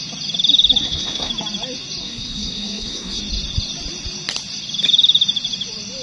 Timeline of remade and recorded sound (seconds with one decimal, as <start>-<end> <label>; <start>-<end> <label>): 0.0-0.8 recorded; 0.8-1.3 remade; 1.3-2.0 recorded; 2.0-3.2 remade; 3.2-6.0 recorded